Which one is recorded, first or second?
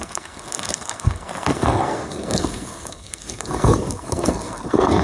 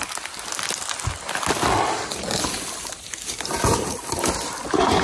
second